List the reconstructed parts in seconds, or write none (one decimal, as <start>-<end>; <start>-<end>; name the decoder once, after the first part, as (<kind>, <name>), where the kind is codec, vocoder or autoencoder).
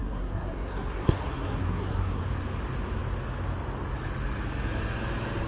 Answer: 0.0-2.2 (codec, SNAC)